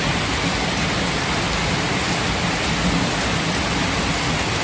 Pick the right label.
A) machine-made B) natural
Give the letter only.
B